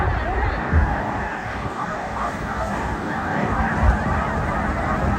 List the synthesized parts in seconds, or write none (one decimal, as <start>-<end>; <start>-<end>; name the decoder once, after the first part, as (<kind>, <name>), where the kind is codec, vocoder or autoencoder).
0.6-3.7 (codec, DAC)